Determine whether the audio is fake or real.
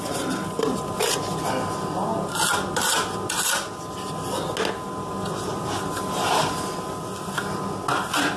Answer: real